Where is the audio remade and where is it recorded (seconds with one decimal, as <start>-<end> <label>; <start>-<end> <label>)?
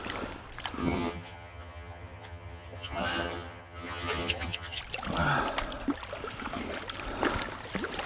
0.0-0.8 recorded; 0.8-4.8 remade; 4.8-8.1 recorded